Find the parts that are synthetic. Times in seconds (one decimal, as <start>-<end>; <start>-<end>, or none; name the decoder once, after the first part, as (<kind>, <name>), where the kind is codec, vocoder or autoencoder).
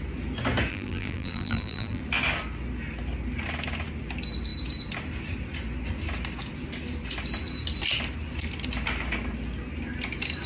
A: 0.7-2.0 (vocoder, BigVGAN v2)